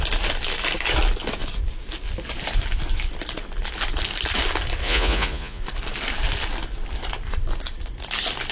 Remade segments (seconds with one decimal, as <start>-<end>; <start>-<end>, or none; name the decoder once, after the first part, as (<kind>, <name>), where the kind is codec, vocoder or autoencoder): 4.8-5.6 (vocoder, Vocos)